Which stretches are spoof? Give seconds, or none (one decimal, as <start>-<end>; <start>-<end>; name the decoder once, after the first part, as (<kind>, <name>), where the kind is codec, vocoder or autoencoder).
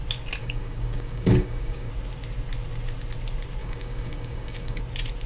0.4-1.9 (codec, DAC); 3.6-4.8